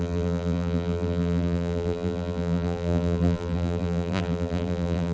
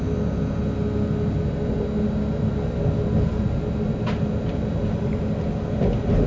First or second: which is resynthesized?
first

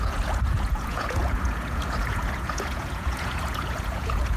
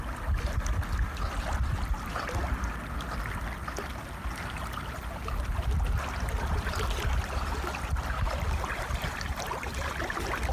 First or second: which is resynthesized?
first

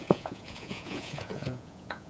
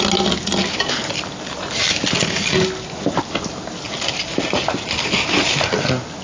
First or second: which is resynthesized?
first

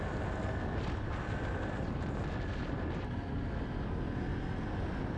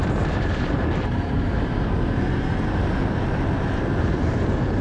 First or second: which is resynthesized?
second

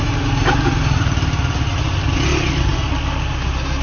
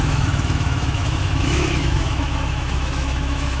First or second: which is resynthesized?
second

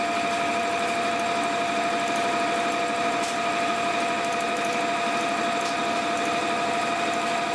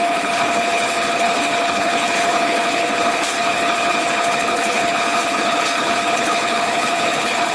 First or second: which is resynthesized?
second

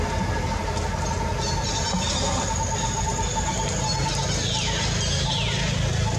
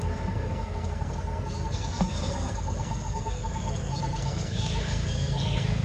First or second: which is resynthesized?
second